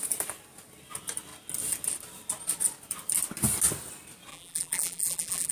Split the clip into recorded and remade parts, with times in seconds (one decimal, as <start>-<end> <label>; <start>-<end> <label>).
0.0-4.3 recorded; 4.3-5.5 remade

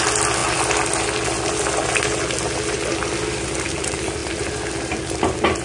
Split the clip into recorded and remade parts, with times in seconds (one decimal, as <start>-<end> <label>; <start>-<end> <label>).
0.0-5.6 recorded

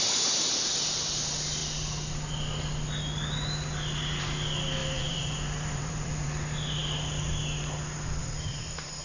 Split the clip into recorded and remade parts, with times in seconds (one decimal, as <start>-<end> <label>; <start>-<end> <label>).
0.0-4.8 recorded; 4.8-6.3 remade; 6.3-8.2 recorded; 8.2-9.0 remade

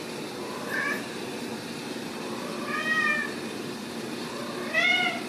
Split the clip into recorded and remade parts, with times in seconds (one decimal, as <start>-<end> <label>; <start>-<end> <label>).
0.0-3.2 remade; 3.2-3.9 recorded; 3.9-5.3 remade

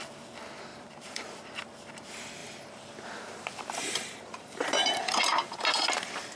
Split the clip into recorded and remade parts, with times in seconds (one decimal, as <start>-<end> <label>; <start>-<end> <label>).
0.0-0.7 recorded; 0.7-1.4 remade; 1.4-2.4 recorded; 2.4-6.4 remade